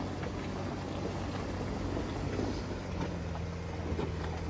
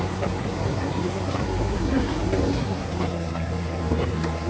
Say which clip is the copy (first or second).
second